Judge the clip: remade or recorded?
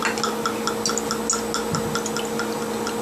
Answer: recorded